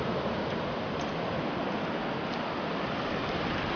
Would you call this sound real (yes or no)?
yes